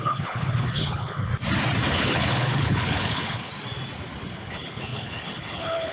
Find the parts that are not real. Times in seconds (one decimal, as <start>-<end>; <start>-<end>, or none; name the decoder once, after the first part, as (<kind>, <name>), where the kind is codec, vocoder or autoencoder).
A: 0.0-1.3 (codec, HILCodec); 1.9-3.5; 4.3-5.9